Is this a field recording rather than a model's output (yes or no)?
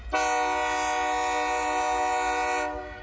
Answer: yes